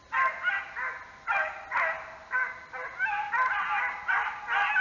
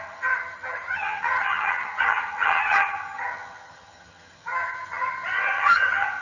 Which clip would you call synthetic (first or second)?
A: second